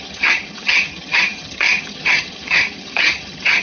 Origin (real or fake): fake